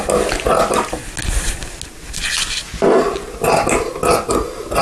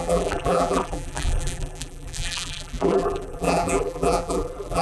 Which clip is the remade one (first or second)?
second